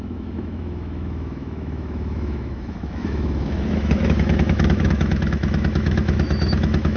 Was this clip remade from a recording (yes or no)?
yes